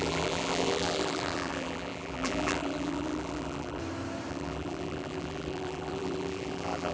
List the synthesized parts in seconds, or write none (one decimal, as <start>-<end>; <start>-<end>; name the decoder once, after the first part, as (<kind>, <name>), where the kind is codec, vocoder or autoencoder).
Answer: 0.0-3.8 (vocoder, BigVGAN v2); 4.3-6.9